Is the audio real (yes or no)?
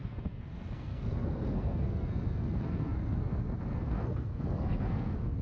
no